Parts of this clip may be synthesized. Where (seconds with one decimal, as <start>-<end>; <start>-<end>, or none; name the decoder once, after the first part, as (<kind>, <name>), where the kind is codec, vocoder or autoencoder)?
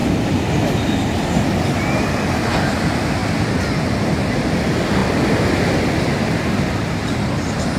0.0-2.2 (vocoder, BigVGAN v2)